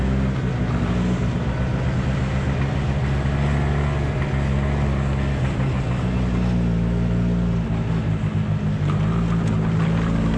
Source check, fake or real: real